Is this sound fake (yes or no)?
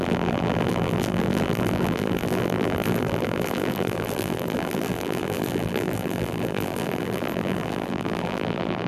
yes